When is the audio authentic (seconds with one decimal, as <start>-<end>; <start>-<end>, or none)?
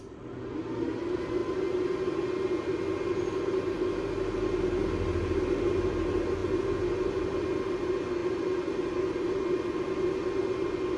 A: 0.0-11.0